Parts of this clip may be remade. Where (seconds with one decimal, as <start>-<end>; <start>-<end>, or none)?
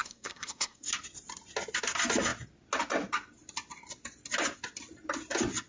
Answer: 0.0-0.9